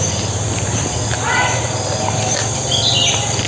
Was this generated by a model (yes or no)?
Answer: no